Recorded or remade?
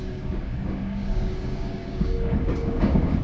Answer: remade